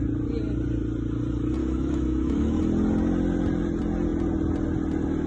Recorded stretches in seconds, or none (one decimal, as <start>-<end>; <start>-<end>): 0.0-1.6; 2.6-5.3